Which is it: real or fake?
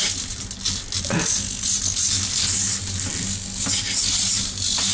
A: real